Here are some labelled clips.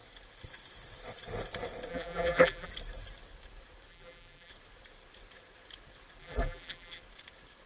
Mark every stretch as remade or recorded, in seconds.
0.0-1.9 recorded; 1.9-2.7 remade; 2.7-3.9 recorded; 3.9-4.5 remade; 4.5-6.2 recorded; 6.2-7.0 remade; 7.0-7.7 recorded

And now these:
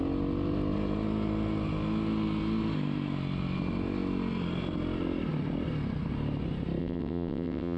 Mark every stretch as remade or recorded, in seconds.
0.0-6.8 recorded; 6.8-7.8 remade